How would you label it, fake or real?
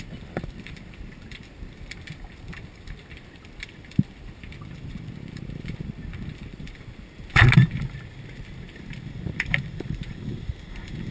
fake